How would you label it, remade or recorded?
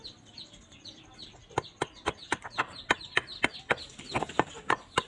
recorded